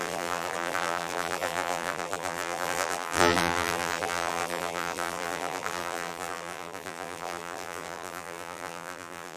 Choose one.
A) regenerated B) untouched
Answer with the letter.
A